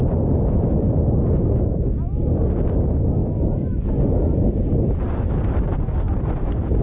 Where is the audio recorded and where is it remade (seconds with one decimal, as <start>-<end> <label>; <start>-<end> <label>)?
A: 0.0-6.8 recorded